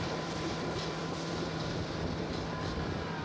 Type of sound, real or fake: fake